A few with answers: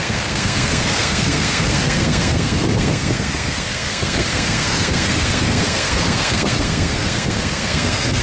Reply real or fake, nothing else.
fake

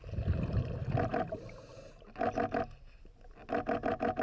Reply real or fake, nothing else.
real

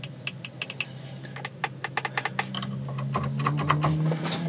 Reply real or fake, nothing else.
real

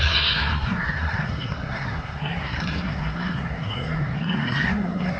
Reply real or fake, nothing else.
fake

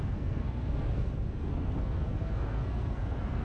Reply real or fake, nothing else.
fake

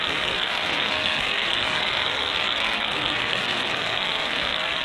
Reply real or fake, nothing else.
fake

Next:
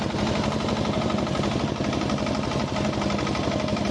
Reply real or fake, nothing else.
real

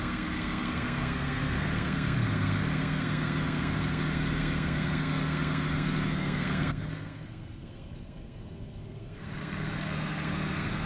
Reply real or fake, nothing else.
fake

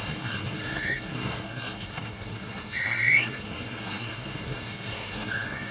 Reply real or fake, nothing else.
fake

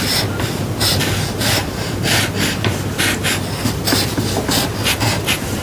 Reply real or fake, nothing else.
real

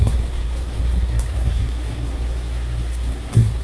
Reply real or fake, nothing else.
fake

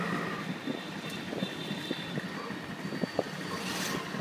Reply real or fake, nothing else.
real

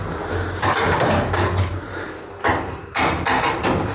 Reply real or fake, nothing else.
real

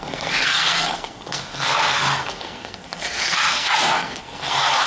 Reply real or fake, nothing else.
fake